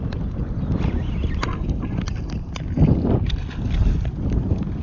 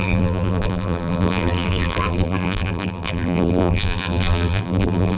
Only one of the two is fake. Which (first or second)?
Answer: second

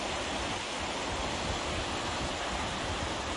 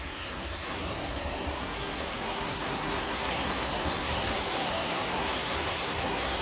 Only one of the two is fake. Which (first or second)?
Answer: second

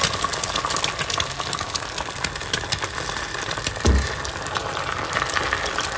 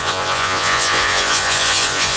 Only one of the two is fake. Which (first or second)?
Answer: second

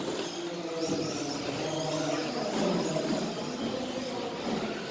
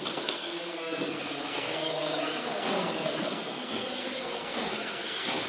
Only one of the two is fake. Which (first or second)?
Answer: second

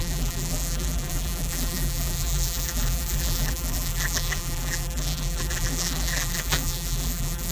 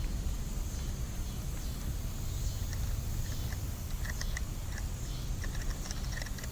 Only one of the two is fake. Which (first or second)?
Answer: first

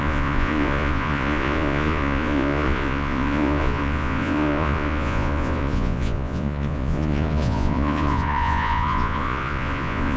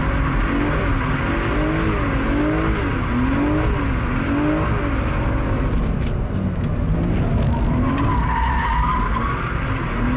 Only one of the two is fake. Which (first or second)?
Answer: first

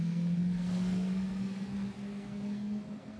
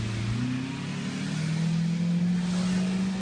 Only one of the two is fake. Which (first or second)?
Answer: first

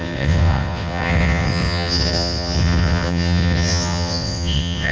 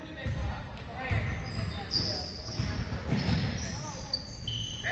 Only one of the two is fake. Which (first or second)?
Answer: first